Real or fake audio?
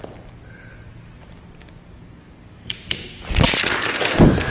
real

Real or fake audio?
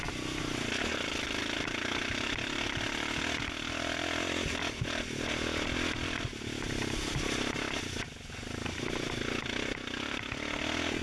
real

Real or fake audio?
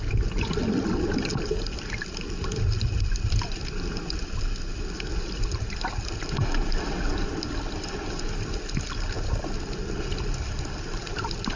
real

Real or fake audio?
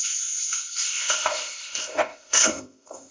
fake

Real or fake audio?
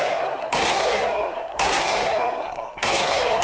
fake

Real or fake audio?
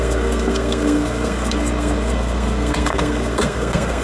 fake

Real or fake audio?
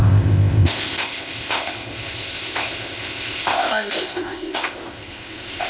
fake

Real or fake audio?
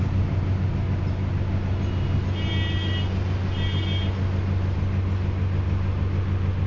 real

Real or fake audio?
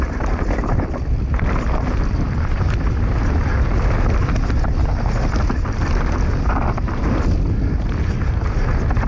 real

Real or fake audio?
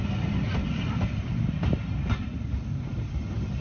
real